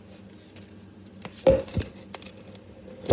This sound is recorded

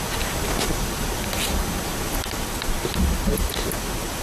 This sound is recorded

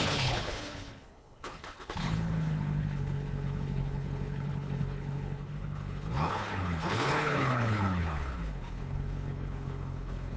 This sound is remade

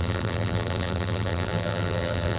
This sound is remade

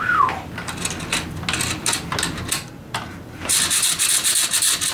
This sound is recorded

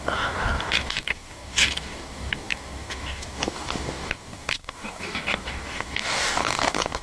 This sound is remade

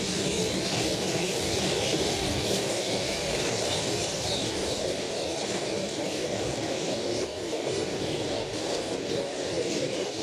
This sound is remade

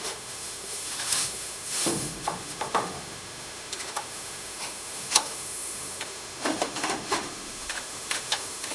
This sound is remade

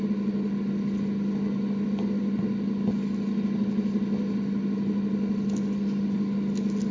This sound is recorded